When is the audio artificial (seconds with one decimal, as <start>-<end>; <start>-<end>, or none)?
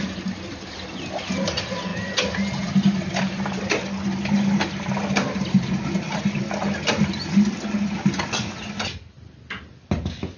none